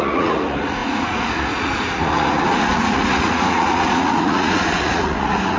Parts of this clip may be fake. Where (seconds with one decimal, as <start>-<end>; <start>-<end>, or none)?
0.0-5.6